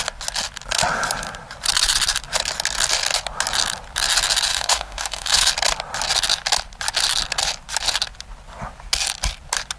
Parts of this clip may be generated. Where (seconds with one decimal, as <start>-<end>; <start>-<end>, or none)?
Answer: 4.5-5.5